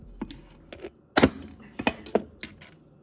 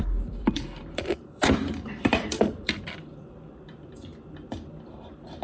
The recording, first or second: first